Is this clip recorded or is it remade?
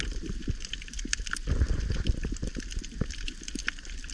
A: recorded